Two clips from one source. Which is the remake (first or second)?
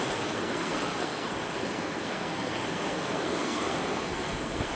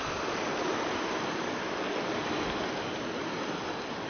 first